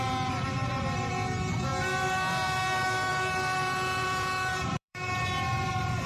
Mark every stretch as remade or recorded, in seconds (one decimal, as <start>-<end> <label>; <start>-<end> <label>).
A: 0.0-1.7 remade; 1.7-3.1 recorded; 3.1-6.1 remade